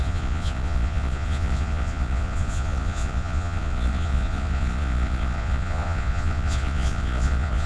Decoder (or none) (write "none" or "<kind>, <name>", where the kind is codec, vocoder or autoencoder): vocoder, Vocos